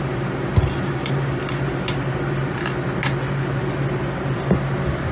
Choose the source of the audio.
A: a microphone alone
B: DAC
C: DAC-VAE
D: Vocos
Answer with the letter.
A